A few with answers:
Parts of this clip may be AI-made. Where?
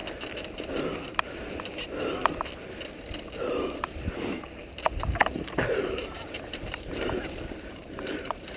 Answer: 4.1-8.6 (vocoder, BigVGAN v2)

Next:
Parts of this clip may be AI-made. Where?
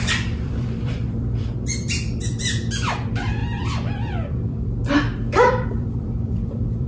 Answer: 0.0-6.9 (vocoder, BigVGAN v2)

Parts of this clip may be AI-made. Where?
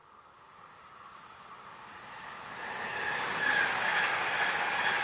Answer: none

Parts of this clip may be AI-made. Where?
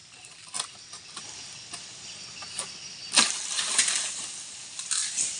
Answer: 3.8-4.6 (vocoder, BigVGAN v2)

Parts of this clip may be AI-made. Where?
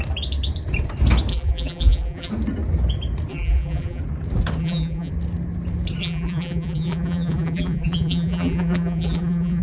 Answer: 1.3-2.3 (vocoder, BigVGAN v2); 3.3-4.0; 4.6-5.1; 6.0-9.6